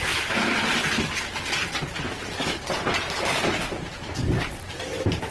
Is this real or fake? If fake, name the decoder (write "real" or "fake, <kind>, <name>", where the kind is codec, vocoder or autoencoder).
real